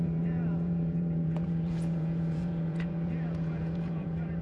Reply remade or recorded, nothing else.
remade